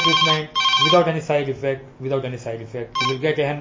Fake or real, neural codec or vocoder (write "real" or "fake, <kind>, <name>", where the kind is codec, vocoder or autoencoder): real